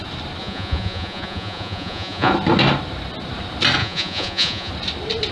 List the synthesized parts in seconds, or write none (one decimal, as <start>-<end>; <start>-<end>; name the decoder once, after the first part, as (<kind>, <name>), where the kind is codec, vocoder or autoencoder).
0.4-2.3 (vocoder, Vocos); 3.8-4.7